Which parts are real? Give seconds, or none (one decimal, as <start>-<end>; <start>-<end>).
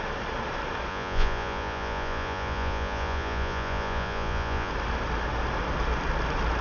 0.0-0.9; 4.7-6.6